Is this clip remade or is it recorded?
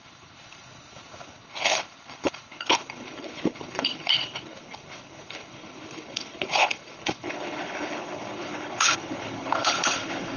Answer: remade